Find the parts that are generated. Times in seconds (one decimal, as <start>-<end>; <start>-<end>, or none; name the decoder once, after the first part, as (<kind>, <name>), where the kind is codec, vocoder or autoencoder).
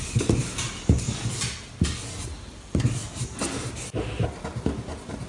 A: none